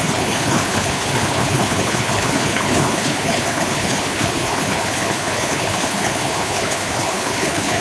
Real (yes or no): no